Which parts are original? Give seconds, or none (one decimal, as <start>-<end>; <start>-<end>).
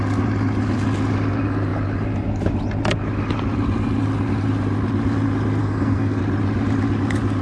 0.0-5.6; 6.2-7.4